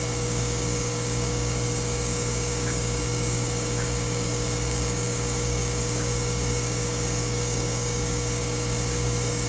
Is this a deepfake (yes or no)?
yes